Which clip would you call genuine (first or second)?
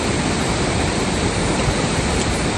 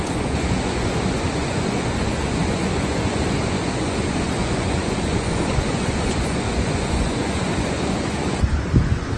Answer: first